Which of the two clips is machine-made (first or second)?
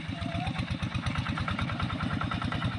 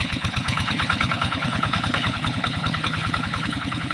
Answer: second